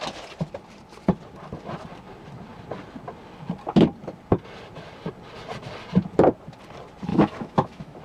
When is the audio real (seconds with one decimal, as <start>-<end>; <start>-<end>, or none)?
0.0-7.1